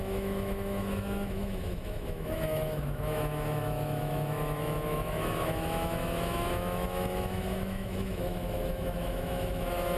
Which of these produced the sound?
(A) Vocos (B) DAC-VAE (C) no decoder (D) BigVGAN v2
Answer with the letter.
B